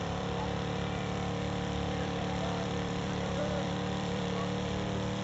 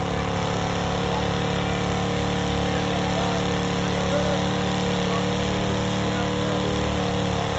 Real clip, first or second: second